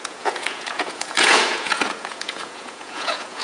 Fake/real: fake